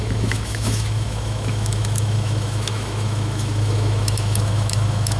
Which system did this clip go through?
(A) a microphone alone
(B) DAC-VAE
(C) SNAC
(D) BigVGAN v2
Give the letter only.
B